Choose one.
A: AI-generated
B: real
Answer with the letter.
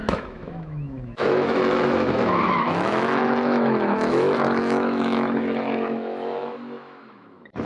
A